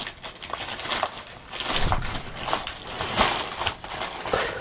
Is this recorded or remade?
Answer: recorded